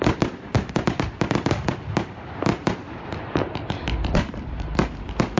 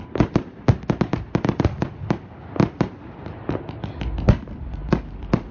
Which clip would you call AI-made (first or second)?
first